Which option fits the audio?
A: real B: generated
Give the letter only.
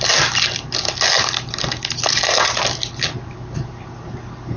A